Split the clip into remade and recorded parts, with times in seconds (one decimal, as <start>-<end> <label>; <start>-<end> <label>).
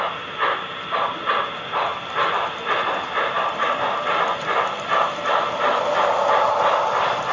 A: 0.0-7.3 recorded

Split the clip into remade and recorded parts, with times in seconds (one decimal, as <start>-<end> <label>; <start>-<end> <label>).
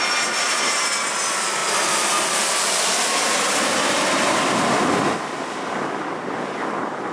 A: 0.0-7.1 recorded